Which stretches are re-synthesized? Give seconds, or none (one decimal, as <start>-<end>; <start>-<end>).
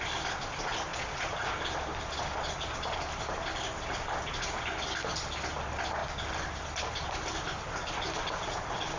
0.9-1.5